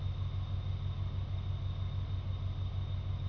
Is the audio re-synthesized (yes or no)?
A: no